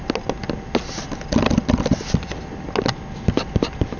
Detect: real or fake real